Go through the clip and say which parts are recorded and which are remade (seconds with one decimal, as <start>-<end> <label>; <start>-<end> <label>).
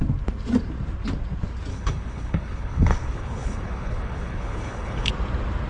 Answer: 0.0-1.7 recorded; 1.7-5.1 remade; 5.1-5.7 recorded